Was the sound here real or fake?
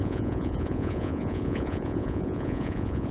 fake